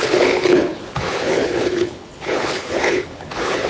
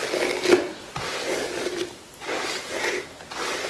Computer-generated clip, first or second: first